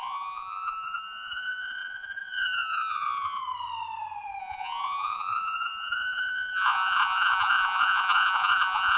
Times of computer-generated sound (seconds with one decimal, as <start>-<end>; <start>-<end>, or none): 0.0-3.4; 4.4-9.0

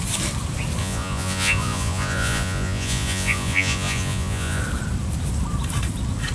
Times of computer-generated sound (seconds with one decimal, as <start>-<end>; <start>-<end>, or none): 0.8-4.6

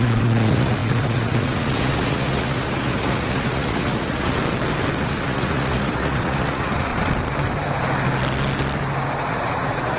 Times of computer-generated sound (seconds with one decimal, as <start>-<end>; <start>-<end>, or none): 0.0-4.4; 5.0-6.9; 9.3-10.0

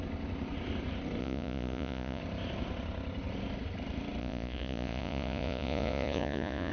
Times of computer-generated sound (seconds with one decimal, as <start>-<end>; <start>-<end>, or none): 1.2-2.2; 4.2-6.7